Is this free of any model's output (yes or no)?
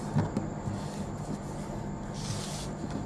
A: yes